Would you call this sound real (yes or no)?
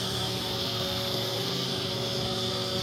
no